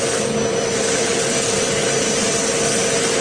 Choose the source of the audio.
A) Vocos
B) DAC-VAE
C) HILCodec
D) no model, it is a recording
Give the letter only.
D